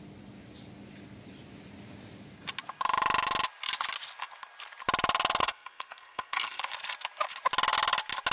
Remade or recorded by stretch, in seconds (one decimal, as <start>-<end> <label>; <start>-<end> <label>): 0.0-5.4 recorded; 5.4-6.6 remade; 6.6-8.3 recorded